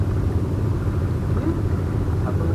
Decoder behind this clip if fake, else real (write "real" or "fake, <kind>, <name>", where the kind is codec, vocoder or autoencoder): real